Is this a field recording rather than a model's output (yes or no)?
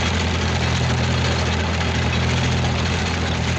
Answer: yes